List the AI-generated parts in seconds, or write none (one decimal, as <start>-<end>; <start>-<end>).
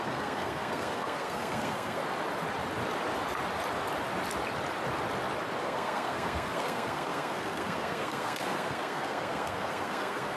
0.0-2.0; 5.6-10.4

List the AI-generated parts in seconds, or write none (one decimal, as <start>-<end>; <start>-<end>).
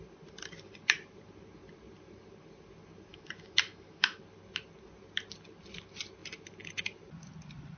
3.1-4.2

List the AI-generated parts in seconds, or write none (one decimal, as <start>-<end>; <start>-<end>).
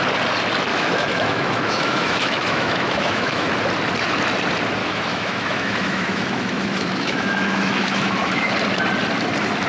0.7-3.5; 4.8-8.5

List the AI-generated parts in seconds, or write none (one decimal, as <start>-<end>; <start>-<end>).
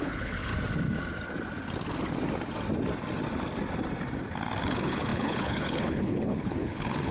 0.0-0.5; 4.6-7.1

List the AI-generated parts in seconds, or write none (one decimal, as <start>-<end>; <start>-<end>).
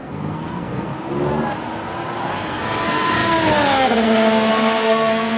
0.0-0.9; 2.2-5.4